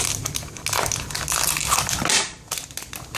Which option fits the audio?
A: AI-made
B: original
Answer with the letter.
B